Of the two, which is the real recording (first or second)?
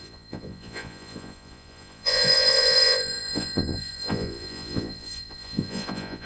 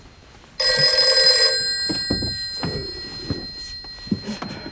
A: second